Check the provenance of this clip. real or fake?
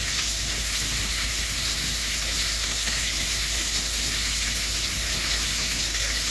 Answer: fake